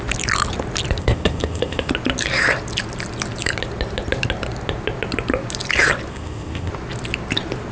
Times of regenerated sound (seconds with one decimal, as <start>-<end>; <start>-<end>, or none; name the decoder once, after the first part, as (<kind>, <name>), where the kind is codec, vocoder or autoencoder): 1.0-1.9 (codec, ZipCodec); 6.1-6.7